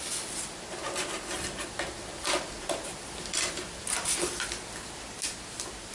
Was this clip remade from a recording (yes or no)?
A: no